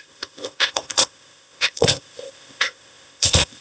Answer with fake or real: fake